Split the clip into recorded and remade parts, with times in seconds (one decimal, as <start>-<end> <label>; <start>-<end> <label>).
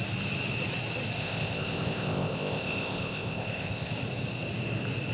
0.0-1.2 recorded; 1.2-3.9 remade; 3.9-5.1 recorded